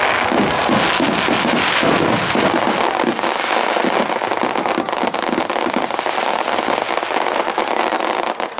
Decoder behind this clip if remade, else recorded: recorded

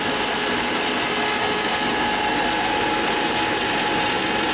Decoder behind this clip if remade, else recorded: recorded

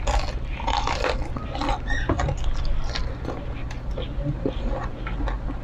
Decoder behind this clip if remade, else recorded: recorded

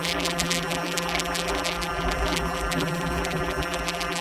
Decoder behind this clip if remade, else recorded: remade, vocoder, BigVGAN v2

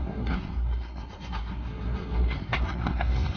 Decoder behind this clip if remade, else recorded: remade, codec, SNAC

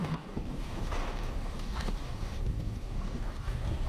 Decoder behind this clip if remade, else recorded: remade, codec, DAC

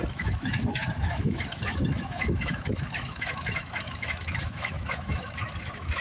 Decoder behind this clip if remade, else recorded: remade, autoencoder, DAC-VAE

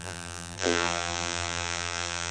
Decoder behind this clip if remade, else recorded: remade, vocoder, BigVGAN v2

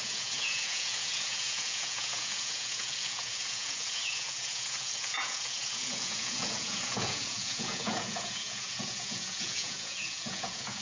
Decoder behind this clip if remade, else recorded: remade, vocoder, Vocos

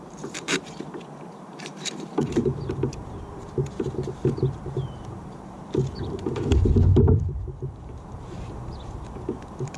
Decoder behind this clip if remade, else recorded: remade, vocoder, BigVGAN v2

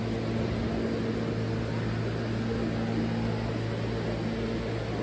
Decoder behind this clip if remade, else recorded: recorded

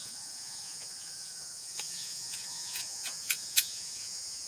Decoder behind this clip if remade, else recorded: remade, vocoder, Vocos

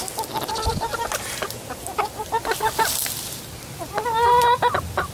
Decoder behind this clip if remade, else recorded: recorded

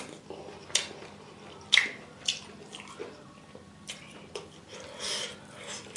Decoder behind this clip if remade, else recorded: remade, vocoder, BigVGAN v2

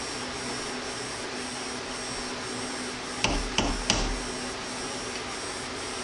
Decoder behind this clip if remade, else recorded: recorded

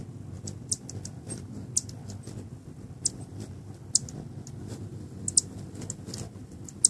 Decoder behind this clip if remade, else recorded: recorded